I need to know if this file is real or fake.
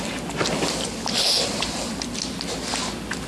real